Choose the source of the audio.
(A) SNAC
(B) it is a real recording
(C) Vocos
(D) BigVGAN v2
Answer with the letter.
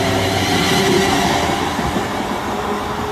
B